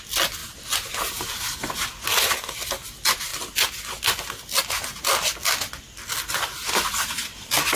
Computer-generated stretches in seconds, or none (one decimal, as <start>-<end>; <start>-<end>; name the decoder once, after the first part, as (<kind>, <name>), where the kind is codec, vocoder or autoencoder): none

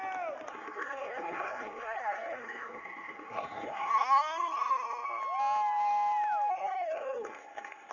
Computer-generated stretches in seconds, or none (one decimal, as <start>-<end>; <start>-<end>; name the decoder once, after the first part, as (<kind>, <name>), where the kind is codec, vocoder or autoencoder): 0.5-5.2 (codec, SNAC); 6.5-7.9

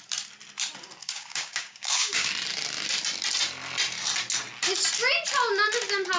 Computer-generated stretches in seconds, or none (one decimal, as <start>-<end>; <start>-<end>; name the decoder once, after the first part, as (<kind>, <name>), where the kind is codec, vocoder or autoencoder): 1.0-2.3 (codec, DAC)

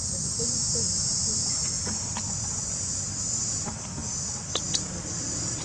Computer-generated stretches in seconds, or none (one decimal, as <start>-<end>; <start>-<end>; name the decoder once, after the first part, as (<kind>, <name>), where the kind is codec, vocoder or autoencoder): 0.0-3.4 (vocoder, Vocos)

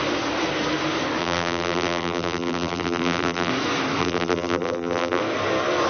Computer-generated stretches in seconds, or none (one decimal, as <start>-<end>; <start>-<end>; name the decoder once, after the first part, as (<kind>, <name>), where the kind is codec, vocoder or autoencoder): 1.2-3.5 (vocoder, BigVGAN v2); 4.0-5.2

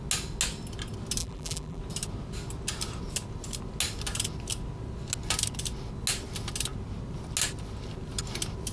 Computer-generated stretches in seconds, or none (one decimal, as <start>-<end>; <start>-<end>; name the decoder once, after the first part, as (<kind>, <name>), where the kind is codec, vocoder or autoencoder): 1.2-1.8 (vocoder, BigVGAN v2)

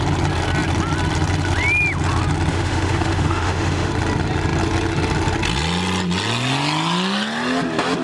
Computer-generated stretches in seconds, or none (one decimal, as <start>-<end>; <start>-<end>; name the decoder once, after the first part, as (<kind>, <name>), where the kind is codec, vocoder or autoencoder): 2.5-3.9 (autoencoder, DAC-VAE)

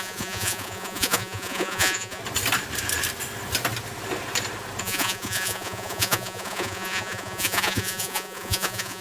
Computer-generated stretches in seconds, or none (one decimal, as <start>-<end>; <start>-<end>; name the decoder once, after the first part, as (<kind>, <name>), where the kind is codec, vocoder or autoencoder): 0.0-2.2 (vocoder, Vocos); 4.8-9.0